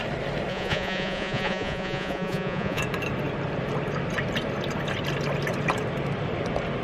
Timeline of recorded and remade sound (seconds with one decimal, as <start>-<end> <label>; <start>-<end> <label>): 0.0-0.5 recorded; 0.5-2.8 remade; 2.8-6.8 recorded